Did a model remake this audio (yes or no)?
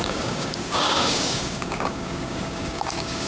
yes